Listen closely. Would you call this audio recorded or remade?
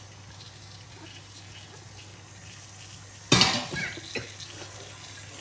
recorded